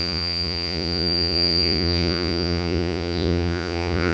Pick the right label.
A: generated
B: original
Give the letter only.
A